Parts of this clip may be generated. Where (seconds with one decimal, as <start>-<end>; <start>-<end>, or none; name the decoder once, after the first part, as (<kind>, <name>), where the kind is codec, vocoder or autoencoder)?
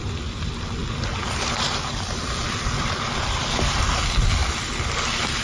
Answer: 0.8-4.0 (vocoder, BigVGAN v2)